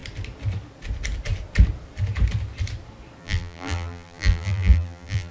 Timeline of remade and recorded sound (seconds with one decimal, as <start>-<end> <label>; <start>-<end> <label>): 0.0-3.2 recorded; 3.2-5.3 remade